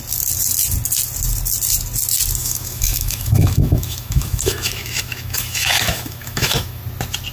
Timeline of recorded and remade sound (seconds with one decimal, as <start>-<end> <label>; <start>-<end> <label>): 0.0-2.4 recorded; 2.4-6.8 remade; 6.8-7.3 recorded